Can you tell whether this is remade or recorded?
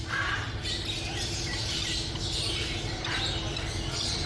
recorded